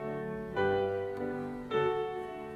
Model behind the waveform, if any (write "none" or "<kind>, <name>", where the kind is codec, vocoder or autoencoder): codec, SNAC